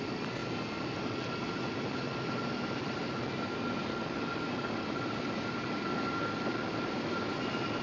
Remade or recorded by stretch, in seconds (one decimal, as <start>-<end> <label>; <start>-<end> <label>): 0.0-0.4 remade; 0.4-1.4 recorded; 1.4-7.8 remade